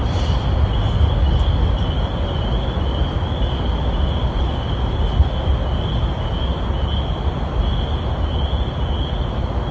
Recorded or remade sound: recorded